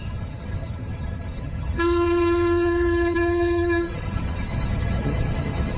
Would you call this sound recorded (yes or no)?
no